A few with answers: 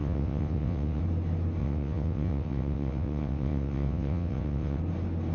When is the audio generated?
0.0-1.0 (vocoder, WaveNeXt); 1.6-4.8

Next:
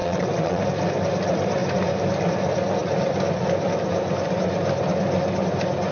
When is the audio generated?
0.0-0.6 (vocoder, WaveNeXt)

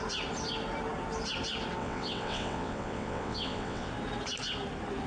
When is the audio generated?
1.8-3.9 (vocoder, WaveNeXt)

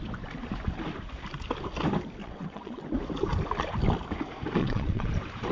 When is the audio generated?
2.2-2.8 (vocoder, WaveNeXt); 4.6-5.1

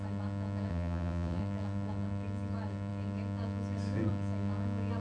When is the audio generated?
0.7-1.4 (vocoder, WaveNeXt)

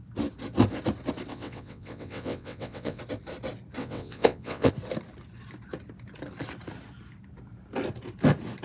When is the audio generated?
1.3-3.0 (vocoder, WaveNeXt); 3.8-4.7